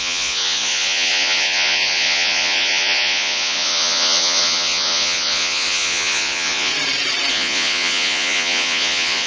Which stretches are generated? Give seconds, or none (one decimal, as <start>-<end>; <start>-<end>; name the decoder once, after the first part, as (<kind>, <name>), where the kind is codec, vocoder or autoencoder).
0.0-6.7 (vocoder, Vocos); 7.3-9.3